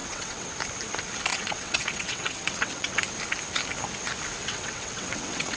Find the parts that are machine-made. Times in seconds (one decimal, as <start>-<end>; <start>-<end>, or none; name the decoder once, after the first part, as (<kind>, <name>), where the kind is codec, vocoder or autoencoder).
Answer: 0.0-0.5 (vocoder, WaveNeXt); 1.3-3.0; 4.4-5.6